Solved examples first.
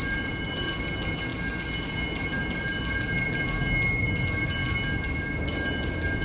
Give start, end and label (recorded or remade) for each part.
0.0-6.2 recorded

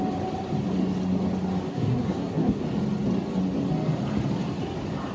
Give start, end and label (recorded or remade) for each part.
0.0-1.7 recorded; 1.7-2.6 remade; 2.6-5.1 recorded

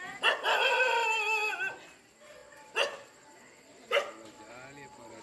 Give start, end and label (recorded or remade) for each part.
0.0-5.2 recorded

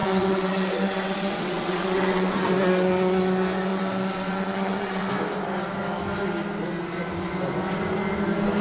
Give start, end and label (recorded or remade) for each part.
0.0-2.5 remade; 2.5-3.7 recorded; 3.7-5.1 remade; 5.1-8.6 recorded

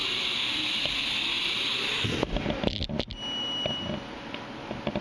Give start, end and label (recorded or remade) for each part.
0.0-5.0 recorded